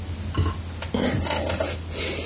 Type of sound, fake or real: real